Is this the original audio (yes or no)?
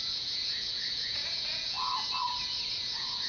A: no